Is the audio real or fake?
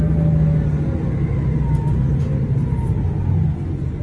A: real